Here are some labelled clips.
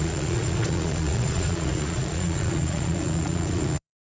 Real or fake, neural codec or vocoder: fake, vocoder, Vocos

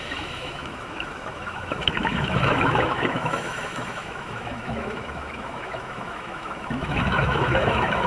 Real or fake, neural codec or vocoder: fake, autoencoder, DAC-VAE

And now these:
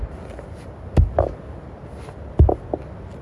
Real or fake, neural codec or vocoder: real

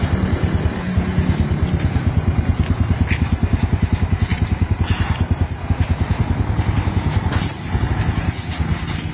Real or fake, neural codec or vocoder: real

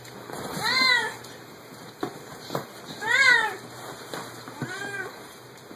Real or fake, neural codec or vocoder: fake, vocoder, BigVGAN v2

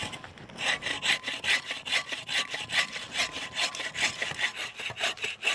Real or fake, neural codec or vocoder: real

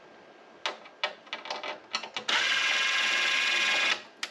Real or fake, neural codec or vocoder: real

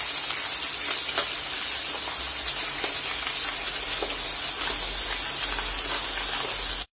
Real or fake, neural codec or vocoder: real